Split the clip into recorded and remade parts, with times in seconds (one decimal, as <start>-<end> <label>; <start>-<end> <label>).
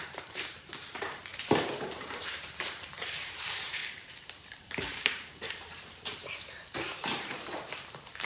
0.0-3.8 remade; 3.8-4.6 recorded; 4.6-8.3 remade